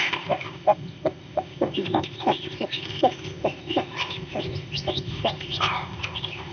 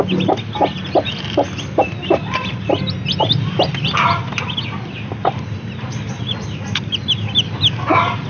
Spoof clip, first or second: first